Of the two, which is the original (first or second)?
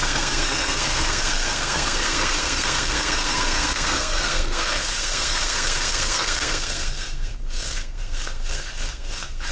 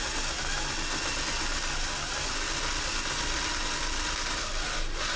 second